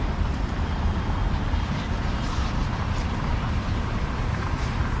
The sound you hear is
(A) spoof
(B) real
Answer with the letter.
A